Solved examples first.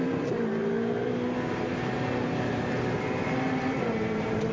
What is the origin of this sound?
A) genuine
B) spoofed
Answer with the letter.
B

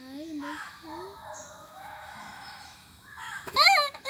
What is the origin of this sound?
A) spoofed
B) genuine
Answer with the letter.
A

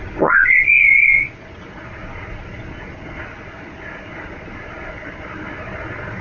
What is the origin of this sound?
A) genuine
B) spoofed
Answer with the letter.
B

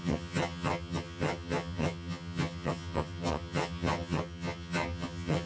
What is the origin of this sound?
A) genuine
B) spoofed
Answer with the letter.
B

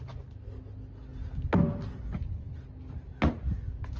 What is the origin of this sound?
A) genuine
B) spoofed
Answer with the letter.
A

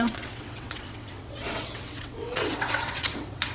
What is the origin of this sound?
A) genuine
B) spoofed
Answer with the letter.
B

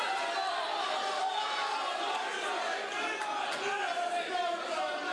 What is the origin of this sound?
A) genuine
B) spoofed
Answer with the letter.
A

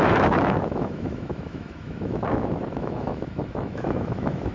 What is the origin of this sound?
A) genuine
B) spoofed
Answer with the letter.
B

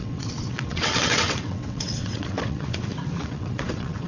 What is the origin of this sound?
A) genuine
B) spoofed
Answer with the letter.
B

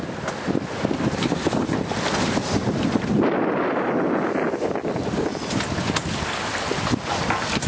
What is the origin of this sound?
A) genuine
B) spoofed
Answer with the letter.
A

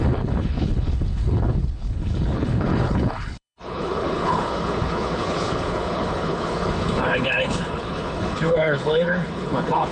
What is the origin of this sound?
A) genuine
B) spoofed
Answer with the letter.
B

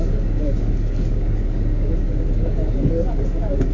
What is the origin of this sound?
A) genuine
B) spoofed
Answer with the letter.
B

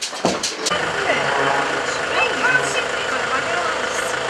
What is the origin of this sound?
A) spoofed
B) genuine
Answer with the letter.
B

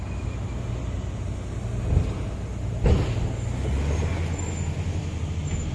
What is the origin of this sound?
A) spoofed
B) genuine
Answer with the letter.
B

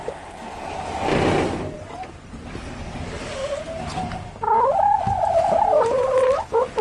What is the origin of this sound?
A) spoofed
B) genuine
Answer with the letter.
B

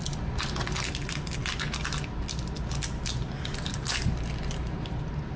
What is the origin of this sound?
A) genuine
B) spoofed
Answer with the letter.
A